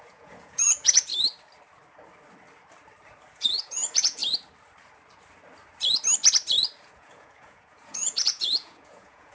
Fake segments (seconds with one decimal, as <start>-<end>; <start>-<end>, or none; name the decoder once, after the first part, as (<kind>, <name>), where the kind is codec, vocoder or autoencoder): 0.0-1.1 (vocoder, Vocos); 3.3-4.2; 6.9-9.3